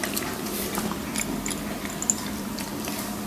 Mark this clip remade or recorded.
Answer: remade